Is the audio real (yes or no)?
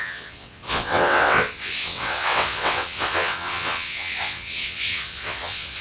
no